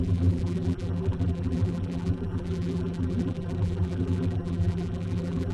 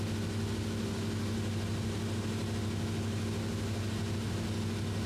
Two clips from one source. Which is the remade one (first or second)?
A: first